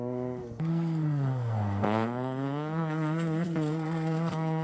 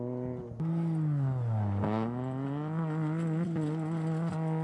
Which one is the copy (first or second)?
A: first